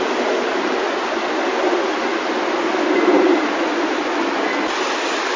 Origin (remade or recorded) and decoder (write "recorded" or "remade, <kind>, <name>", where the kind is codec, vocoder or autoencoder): recorded